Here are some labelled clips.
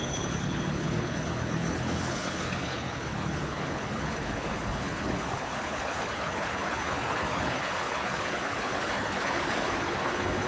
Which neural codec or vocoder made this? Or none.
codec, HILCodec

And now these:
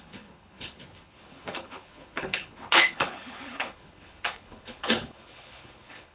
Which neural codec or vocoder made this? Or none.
codec, HILCodec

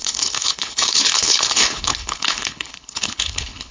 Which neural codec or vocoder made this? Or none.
codec, HILCodec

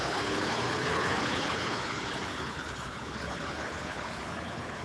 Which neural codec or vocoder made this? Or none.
codec, HILCodec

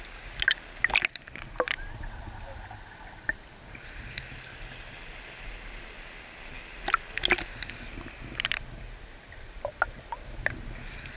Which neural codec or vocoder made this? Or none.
none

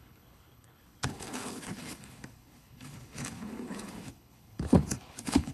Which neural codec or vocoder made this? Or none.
codec, HILCodec